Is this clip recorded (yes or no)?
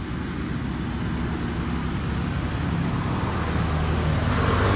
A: yes